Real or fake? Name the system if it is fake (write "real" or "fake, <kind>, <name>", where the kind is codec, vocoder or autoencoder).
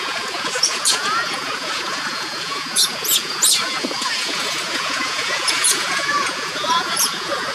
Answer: fake, vocoder, Vocos